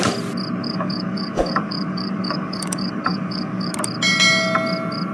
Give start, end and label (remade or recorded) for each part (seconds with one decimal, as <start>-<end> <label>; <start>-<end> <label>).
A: 0.0-0.6 recorded; 0.6-3.7 remade; 3.7-5.1 recorded